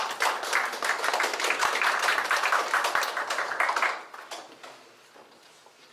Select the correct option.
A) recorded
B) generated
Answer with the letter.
A